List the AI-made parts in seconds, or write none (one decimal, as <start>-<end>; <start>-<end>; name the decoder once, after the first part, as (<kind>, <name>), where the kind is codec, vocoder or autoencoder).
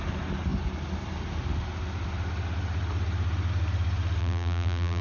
4.2-5.0 (vocoder, BigVGAN v2)